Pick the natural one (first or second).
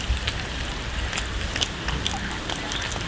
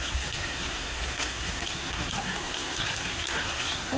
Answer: first